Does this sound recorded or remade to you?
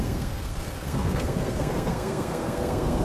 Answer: remade